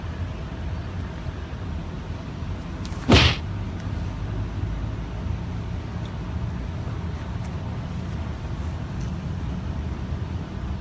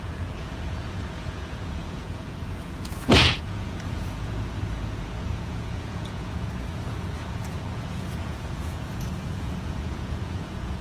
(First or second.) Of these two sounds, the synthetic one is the second